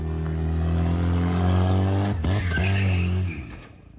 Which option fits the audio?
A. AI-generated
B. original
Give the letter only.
B